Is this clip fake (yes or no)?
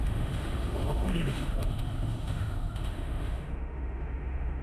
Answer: yes